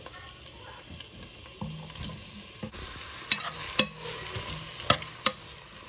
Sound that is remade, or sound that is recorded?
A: recorded